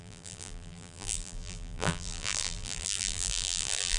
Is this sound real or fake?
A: fake